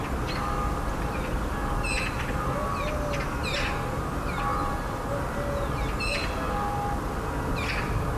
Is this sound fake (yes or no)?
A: no